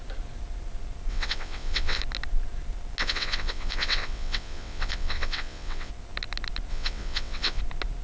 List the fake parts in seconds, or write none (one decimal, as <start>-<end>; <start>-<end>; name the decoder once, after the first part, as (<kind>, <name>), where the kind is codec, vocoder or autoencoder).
1.1-2.0 (vocoder, WaveNeXt); 3.0-5.9; 6.7-7.6